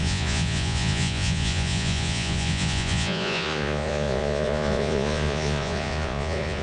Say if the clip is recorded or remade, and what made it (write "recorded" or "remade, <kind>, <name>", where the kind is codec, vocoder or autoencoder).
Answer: remade, vocoder, Vocos